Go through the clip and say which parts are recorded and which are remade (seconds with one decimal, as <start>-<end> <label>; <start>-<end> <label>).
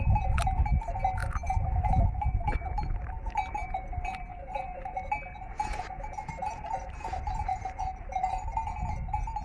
0.0-7.5 remade; 7.5-8.1 recorded; 8.1-9.4 remade